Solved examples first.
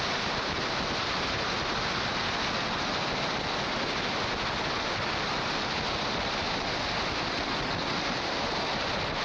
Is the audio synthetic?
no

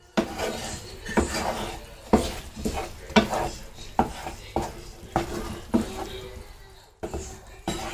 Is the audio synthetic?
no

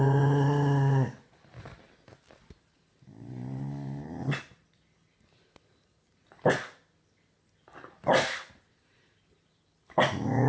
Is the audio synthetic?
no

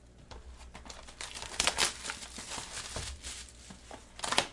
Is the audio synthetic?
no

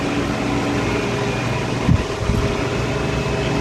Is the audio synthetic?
no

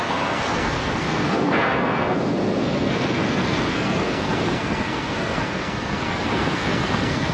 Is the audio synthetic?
yes